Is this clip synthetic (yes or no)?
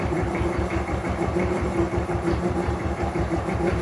yes